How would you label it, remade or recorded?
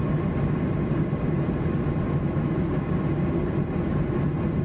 recorded